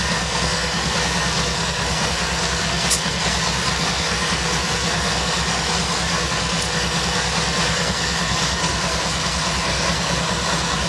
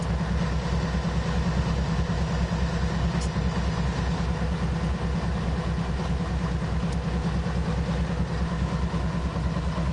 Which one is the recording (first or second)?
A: second